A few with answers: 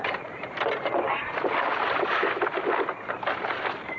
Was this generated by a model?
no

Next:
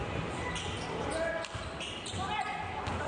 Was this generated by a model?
no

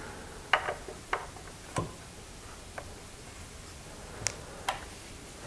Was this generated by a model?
no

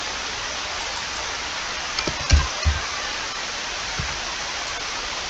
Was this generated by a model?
yes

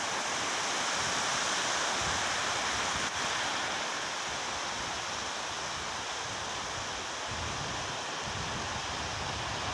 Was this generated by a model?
no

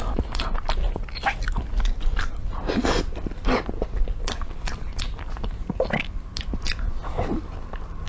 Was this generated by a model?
no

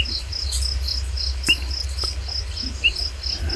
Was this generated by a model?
no